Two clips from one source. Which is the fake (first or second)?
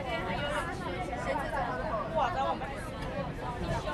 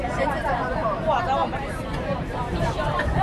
second